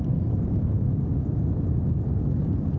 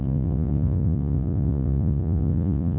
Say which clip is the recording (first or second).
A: first